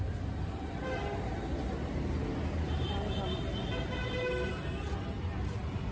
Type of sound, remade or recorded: recorded